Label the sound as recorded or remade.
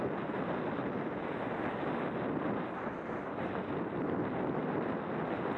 recorded